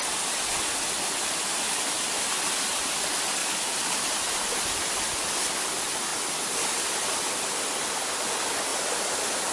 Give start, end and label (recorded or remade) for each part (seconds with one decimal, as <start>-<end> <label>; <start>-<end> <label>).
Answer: 0.0-3.4 recorded; 3.4-4.0 remade; 4.0-9.5 recorded